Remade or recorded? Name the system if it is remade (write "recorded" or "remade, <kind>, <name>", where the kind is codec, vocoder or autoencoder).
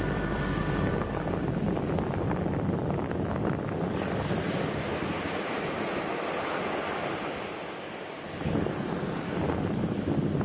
recorded